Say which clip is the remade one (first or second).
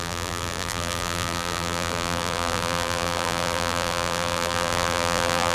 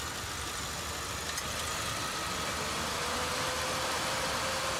first